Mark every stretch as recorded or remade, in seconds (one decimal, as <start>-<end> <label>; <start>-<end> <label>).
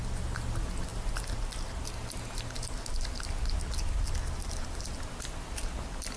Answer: 0.0-6.2 recorded